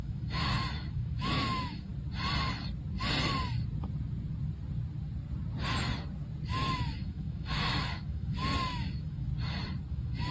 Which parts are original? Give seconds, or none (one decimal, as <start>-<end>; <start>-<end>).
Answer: 1.9-6.6; 9.3-9.9